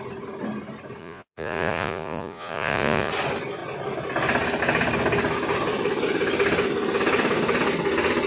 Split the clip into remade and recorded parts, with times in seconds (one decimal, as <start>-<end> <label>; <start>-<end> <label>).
0.0-1.0 recorded; 1.0-3.1 remade; 3.1-8.3 recorded